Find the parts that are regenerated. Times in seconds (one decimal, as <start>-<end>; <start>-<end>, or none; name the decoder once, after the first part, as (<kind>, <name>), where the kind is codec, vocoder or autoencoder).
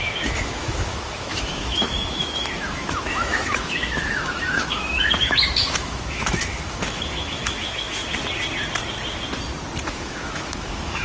0.0-8.0 (autoencoder, DAC-VAE); 9.9-11.0